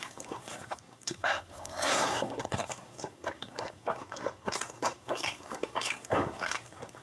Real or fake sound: fake